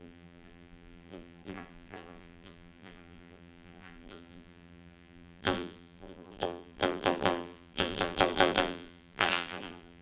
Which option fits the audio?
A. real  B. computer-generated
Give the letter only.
B